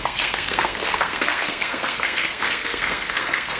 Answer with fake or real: fake